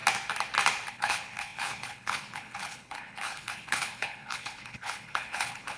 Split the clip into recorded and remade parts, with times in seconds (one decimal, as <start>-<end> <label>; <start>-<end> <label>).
0.0-0.9 recorded; 0.9-5.8 remade